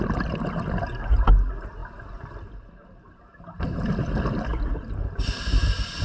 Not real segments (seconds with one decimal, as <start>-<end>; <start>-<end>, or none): 1.8-2.7; 4.5-5.4